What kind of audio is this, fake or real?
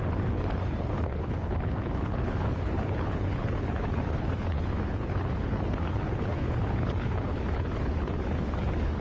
fake